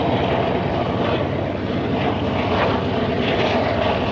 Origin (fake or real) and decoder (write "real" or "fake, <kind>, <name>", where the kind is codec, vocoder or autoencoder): real